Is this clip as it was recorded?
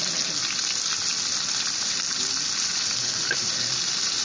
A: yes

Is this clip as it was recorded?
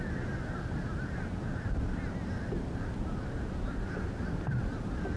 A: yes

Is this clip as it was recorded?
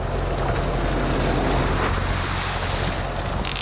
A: yes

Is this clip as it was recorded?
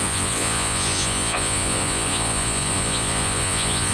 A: no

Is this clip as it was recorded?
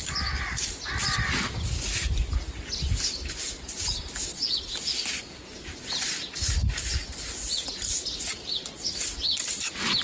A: yes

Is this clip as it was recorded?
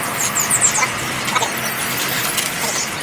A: no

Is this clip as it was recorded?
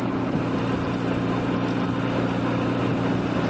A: yes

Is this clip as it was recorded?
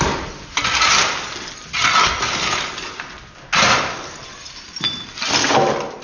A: yes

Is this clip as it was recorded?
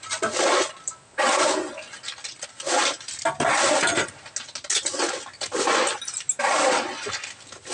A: yes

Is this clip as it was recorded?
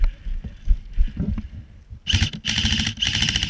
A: yes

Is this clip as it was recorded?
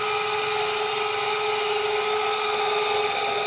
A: yes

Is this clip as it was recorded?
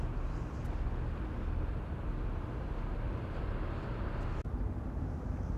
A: yes